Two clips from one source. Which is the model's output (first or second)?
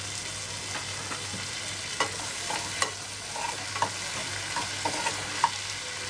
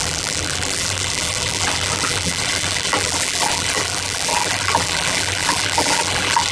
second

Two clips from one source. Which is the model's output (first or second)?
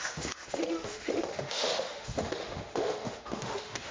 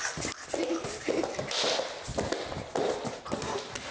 first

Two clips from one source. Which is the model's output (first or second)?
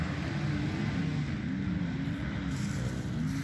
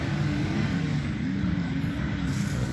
second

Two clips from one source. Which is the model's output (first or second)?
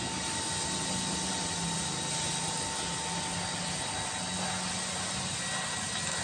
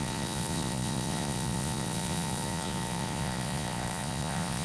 second